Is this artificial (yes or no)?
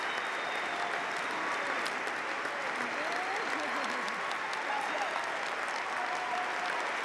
no